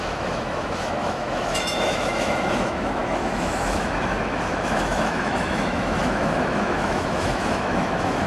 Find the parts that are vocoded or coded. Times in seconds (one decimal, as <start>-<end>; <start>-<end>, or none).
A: 0.0-8.3